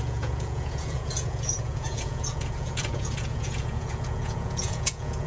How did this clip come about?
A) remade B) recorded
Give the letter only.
A